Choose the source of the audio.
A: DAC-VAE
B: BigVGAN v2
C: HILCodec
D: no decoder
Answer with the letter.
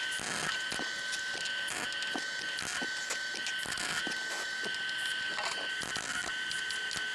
D